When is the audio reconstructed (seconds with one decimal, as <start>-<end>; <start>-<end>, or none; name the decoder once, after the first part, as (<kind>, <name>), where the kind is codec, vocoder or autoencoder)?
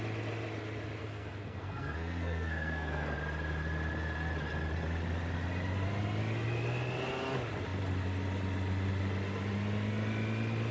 1.0-3.1 (codec, SNAC)